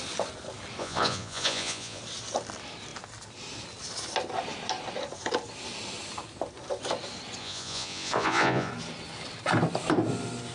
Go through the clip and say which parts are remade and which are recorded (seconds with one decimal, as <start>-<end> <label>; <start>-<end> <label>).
0.0-0.8 recorded; 0.8-2.0 remade; 2.0-7.4 recorded; 7.4-8.7 remade; 8.7-10.5 recorded